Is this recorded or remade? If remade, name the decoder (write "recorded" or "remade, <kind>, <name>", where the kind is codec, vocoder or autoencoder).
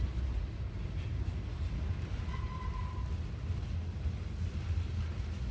recorded